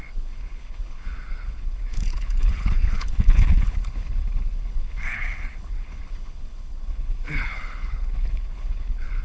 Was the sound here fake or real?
fake